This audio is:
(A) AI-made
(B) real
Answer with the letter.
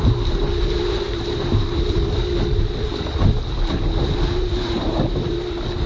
A